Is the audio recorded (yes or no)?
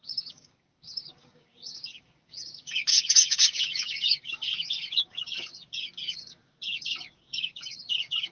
no